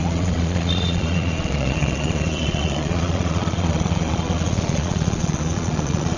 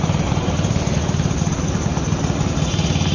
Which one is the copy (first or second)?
first